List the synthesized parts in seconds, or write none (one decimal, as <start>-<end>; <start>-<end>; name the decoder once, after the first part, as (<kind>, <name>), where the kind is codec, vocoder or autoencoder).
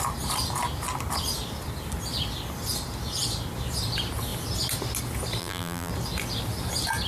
5.4-5.9 (vocoder, BigVGAN v2)